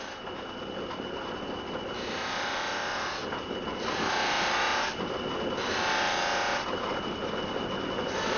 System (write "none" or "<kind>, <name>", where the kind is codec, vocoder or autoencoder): none